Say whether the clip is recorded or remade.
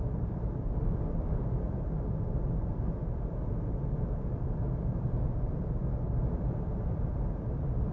remade